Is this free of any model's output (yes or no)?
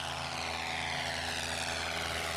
yes